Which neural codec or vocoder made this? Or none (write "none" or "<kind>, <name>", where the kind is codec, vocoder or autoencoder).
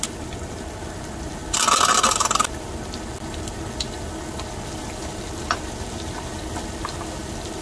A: none